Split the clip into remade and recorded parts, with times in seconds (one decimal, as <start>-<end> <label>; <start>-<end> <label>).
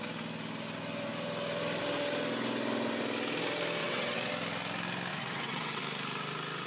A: 0.0-3.8 recorded; 3.8-4.3 remade; 4.3-5.1 recorded; 5.1-5.8 remade; 5.8-6.7 recorded